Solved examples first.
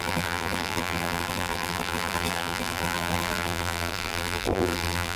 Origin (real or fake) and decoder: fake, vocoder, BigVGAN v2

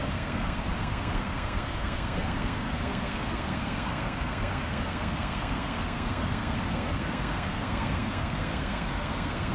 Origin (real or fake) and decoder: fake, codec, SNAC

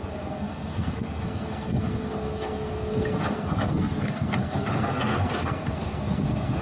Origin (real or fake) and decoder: fake, codec, SNAC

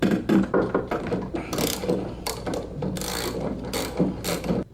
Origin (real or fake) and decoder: real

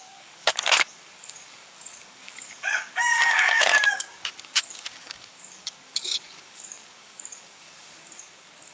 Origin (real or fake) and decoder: fake, codec, DAC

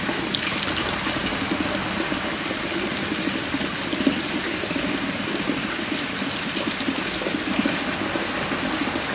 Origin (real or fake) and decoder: real